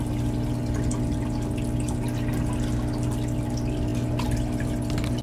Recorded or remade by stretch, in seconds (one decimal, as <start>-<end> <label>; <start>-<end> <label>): 0.0-5.2 recorded